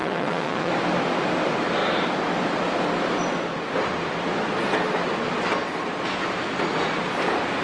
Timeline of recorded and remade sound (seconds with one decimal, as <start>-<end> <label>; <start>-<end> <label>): 0.0-0.7 remade; 0.7-7.6 recorded